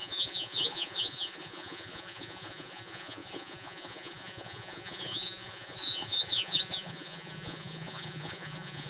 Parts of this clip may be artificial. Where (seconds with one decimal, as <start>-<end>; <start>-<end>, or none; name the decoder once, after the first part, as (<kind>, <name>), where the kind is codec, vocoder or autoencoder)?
0.0-8.9 (vocoder, Vocos)

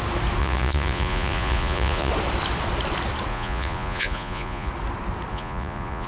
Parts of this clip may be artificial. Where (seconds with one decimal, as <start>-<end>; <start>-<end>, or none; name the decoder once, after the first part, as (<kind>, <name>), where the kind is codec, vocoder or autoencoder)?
0.4-2.1 (vocoder, Vocos); 3.3-4.7; 5.3-6.1

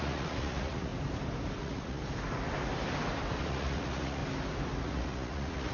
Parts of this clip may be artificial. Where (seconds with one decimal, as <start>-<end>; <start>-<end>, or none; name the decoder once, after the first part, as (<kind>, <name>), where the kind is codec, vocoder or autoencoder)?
0.0-0.9 (vocoder, Vocos); 1.6-2.0; 3.4-4.2; 4.8-5.7